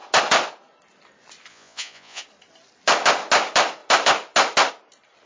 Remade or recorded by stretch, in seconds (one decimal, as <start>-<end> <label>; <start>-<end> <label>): 0.0-1.5 recorded; 1.5-2.2 remade; 2.2-5.3 recorded